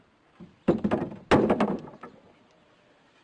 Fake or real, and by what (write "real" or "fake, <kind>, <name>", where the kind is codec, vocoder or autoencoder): real